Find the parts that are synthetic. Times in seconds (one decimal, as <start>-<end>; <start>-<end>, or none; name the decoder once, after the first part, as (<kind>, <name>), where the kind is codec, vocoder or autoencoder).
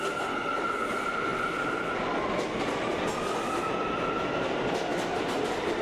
none